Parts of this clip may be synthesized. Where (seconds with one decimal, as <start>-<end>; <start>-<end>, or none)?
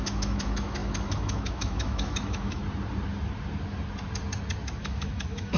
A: 0.0-2.6; 4.8-5.6